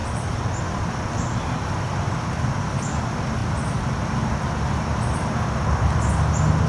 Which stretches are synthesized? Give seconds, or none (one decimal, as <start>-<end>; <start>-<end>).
0.0-0.6; 3.4-4.0